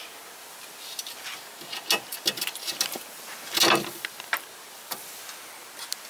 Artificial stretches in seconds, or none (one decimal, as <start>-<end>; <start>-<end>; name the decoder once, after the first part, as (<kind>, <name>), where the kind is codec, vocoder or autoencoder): none